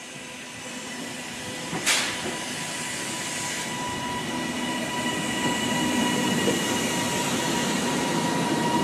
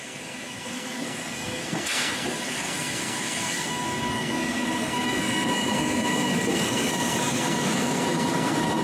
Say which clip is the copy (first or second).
second